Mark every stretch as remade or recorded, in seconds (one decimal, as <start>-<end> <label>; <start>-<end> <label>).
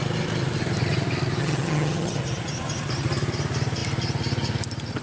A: 0.0-1.4 recorded; 1.4-2.2 remade; 2.2-5.0 recorded